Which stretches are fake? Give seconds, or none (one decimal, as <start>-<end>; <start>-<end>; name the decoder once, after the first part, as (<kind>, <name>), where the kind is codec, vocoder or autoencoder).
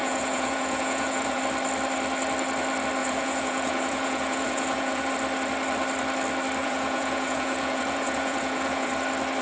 0.0-1.4 (vocoder, Vocos); 3.0-5.1; 6.6-8.9